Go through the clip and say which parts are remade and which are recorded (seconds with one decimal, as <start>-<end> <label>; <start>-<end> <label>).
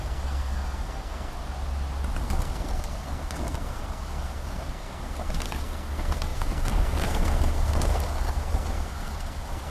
0.0-1.3 remade; 1.3-2.2 recorded; 2.2-9.7 remade